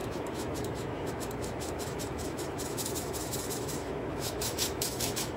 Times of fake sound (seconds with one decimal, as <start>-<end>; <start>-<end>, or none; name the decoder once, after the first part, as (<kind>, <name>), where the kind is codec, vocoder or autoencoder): 0.0-5.4 (autoencoder, DAC-VAE)